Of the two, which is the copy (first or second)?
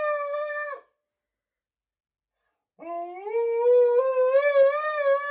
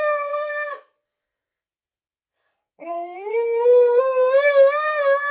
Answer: second